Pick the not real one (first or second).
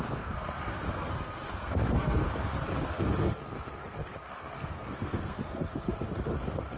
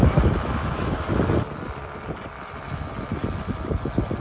first